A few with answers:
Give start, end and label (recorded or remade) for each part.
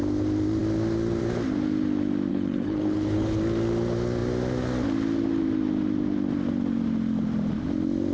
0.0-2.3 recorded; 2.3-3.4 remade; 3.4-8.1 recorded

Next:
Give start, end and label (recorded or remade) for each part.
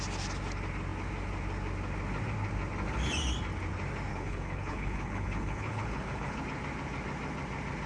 0.0-4.1 recorded; 4.1-6.4 remade; 6.4-7.9 recorded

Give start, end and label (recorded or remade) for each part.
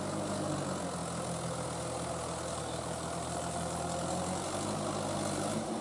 0.0-5.8 recorded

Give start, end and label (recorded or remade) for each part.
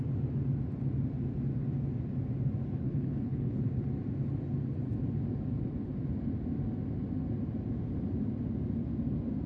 0.0-2.6 recorded; 2.6-3.6 remade; 3.6-9.5 recorded